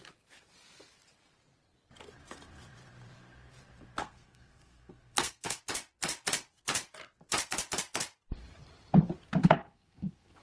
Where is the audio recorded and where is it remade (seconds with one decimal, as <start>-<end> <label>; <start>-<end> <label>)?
0.0-4.0 recorded; 4.0-5.6 remade; 5.6-9.4 recorded; 9.4-10.4 remade